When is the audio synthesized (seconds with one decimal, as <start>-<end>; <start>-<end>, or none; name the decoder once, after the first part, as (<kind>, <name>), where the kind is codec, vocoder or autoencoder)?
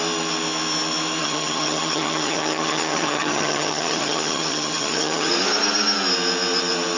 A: 1.2-5.3 (vocoder, HiFi-GAN)